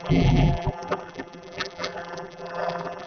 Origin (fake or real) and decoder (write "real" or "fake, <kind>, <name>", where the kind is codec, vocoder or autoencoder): fake, vocoder, BigVGAN v2